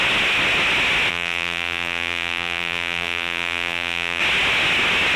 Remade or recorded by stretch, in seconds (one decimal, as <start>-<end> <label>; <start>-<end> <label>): 0.0-1.1 recorded; 1.1-4.2 remade; 4.2-5.2 recorded